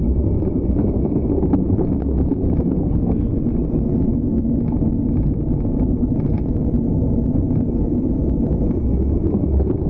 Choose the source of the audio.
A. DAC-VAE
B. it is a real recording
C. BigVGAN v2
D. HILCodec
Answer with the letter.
B